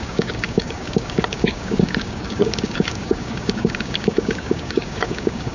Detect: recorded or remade remade